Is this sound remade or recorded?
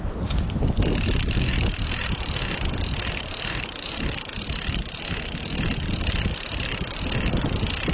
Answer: recorded